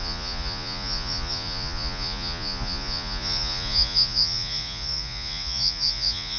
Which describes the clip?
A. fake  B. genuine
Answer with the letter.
A